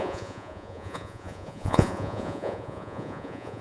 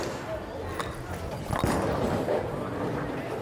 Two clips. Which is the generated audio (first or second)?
first